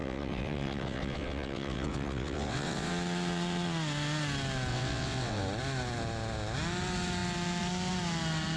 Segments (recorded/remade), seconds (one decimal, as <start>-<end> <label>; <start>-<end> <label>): 0.0-2.9 remade; 2.9-4.7 recorded; 4.7-5.4 remade; 5.4-8.6 recorded